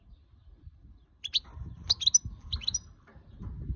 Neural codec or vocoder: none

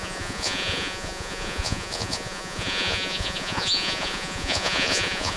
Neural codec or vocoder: vocoder, Vocos